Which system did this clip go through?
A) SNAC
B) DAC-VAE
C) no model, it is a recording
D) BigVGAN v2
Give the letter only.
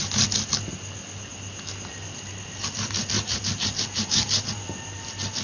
C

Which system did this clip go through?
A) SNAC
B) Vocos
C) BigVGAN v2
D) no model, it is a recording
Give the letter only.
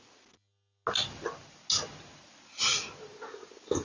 D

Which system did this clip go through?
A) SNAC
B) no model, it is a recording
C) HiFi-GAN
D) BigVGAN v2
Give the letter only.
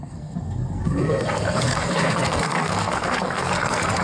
A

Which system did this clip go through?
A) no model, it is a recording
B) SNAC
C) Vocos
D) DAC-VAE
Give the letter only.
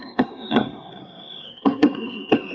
B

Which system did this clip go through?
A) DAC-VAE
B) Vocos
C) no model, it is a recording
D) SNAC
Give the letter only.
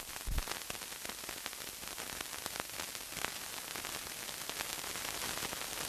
C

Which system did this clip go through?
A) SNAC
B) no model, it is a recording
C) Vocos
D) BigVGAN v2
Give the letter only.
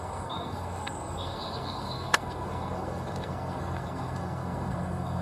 A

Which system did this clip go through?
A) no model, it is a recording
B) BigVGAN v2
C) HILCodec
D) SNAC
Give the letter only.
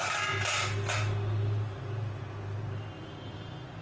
A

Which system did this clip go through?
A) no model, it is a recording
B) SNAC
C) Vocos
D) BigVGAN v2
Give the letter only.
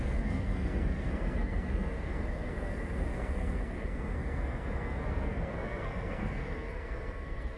B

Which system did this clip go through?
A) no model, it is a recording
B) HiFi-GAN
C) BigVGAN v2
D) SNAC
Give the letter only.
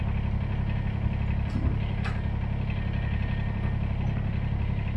A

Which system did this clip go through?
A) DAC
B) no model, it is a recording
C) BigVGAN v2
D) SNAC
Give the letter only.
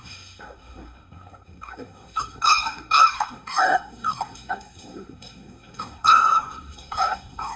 D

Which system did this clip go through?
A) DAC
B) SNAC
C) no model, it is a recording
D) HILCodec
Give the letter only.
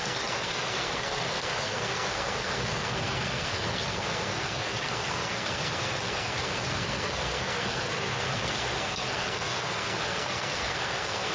B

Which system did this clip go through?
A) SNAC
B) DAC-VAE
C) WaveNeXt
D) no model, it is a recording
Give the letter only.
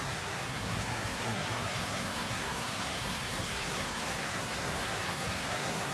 A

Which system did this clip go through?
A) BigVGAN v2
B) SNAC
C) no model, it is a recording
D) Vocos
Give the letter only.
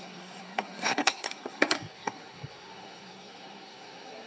B